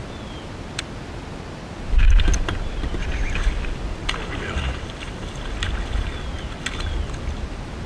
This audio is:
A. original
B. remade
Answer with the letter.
A